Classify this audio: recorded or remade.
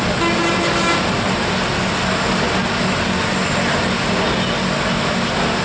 recorded